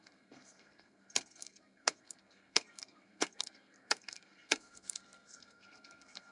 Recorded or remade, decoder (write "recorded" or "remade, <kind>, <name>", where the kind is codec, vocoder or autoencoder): remade, codec, SNAC